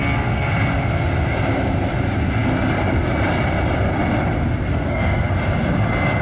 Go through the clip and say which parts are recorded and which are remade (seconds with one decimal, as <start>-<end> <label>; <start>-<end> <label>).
0.0-4.7 recorded; 4.7-5.3 remade; 5.3-6.2 recorded